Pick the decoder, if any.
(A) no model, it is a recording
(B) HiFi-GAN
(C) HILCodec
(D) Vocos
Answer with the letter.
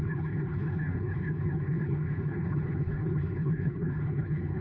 C